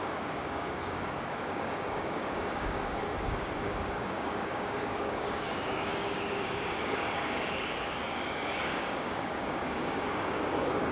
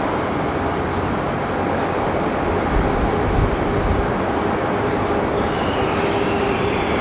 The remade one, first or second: first